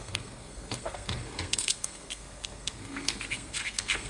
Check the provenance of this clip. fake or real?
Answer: fake